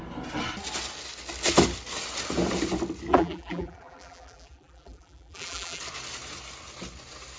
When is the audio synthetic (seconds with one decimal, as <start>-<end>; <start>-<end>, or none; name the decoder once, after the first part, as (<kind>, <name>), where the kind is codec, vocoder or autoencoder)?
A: 3.1-5.8 (vocoder, BigVGAN v2)